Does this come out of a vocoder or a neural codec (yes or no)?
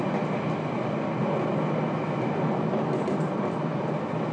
no